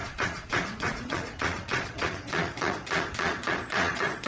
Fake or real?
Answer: fake